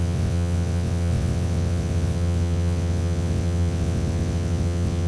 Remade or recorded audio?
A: remade